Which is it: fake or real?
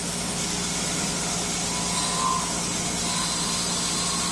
real